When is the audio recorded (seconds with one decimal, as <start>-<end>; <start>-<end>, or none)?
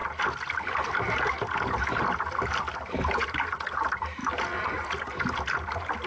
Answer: 0.0-6.1